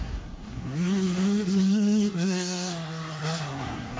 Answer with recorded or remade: remade